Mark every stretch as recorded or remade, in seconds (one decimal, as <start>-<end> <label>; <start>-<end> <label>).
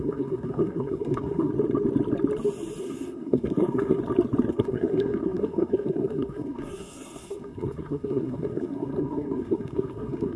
0.0-1.5 remade; 1.5-2.8 recorded; 2.8-4.0 remade; 4.0-4.5 recorded; 4.5-10.4 remade